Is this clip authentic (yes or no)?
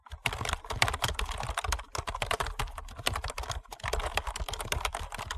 yes